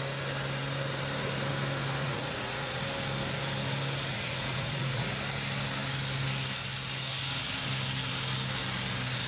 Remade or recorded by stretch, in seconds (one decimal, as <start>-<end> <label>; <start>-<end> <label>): 0.0-2.0 recorded; 2.0-2.8 remade; 2.8-4.1 recorded; 4.1-5.1 remade; 5.1-9.3 recorded